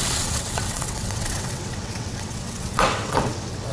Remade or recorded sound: remade